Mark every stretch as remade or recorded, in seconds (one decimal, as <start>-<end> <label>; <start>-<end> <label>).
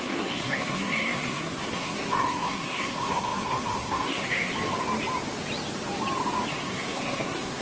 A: 0.0-4.5 remade; 4.5-6.5 recorded; 6.5-7.6 remade